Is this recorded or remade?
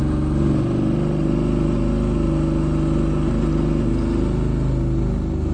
recorded